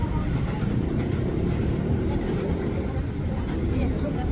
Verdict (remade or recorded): remade